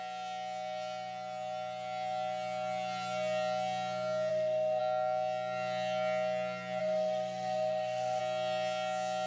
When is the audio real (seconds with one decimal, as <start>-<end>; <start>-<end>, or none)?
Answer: 0.0-4.3; 4.8-6.8; 8.2-9.3